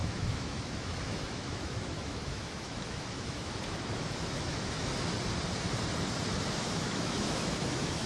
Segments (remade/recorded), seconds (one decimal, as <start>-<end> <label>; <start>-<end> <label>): 0.0-4.9 remade; 4.9-6.6 recorded; 6.6-8.1 remade